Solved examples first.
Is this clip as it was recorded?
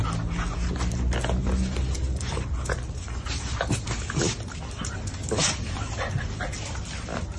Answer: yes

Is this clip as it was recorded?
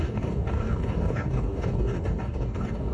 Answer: no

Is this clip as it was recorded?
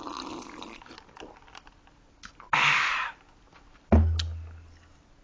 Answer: yes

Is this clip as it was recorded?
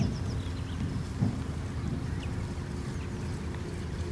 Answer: yes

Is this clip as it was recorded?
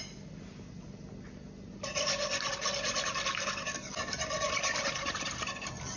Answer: yes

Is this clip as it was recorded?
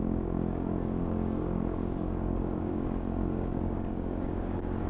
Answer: no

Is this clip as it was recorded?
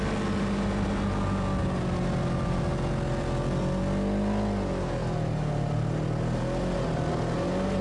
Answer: yes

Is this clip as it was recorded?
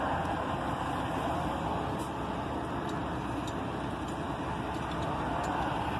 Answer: yes